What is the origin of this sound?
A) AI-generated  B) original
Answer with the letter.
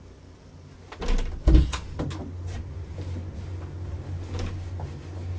B